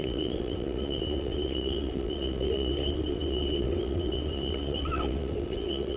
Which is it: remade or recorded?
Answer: remade